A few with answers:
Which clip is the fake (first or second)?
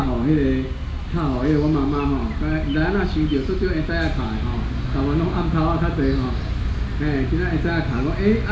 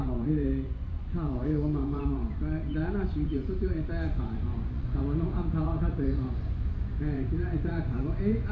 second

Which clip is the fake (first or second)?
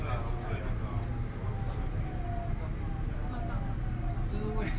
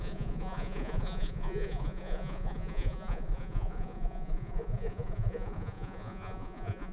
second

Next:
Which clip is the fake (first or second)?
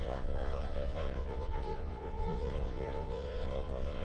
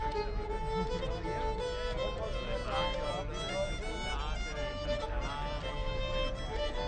first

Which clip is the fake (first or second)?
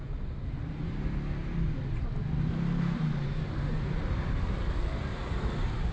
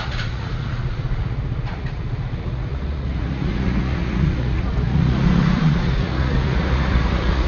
second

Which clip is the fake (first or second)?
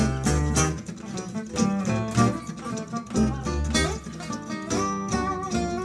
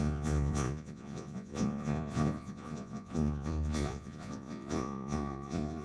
second